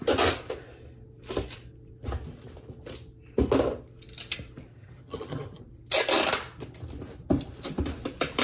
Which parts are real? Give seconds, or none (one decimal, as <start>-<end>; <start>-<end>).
0.0-4.7; 5.6-8.4